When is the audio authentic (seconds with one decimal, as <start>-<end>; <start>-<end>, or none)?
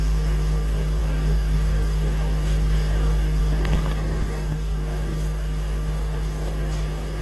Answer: none